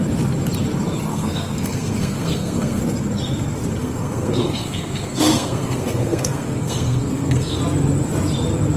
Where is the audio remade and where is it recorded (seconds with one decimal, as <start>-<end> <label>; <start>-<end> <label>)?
0.0-1.1 recorded; 1.1-2.8 remade; 2.8-3.8 recorded; 3.8-7.6 remade; 7.6-8.8 recorded